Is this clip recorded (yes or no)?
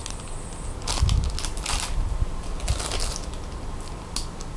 yes